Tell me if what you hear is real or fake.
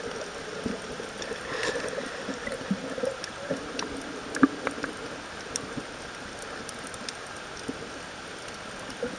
real